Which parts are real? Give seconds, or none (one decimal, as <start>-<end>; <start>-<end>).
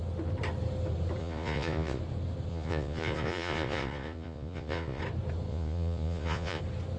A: 0.0-1.2; 2.0-2.5; 5.0-5.5; 6.6-7.0